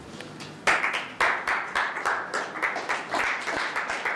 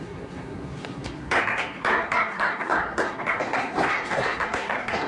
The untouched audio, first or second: first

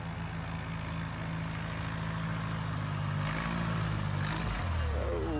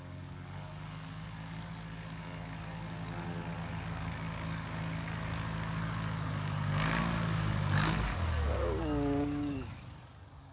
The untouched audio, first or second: first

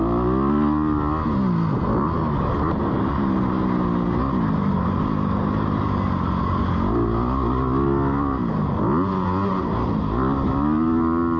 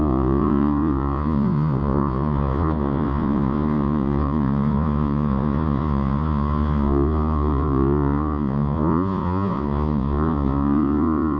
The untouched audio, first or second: first